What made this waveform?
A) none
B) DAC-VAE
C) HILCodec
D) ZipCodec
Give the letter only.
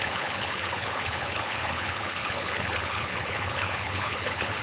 C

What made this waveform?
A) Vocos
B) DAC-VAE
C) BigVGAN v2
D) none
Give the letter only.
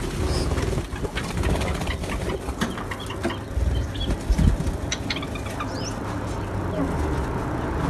D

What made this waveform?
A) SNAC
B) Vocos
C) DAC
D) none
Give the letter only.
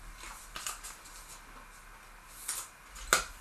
D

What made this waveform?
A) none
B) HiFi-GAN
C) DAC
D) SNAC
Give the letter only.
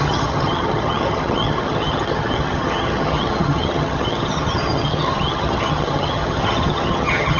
B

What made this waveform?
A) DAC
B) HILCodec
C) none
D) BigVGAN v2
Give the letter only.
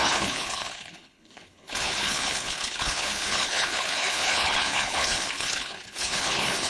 B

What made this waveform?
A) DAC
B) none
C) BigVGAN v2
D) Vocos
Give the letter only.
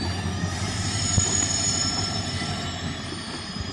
C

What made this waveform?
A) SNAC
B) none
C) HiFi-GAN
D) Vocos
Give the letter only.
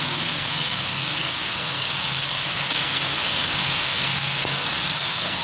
A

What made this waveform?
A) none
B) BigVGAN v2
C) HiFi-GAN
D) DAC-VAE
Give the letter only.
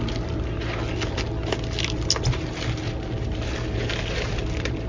A